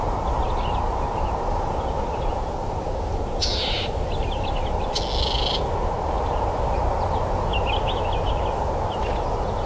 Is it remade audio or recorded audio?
recorded